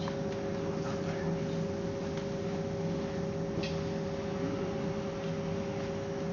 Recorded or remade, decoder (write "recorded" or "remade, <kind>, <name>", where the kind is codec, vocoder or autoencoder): recorded